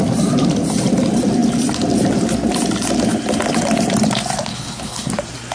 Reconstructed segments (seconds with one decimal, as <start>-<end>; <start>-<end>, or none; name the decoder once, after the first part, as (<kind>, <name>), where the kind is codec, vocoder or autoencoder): 4.5-5.1 (codec, HILCodec)